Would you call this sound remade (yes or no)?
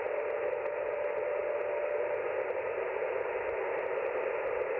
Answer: no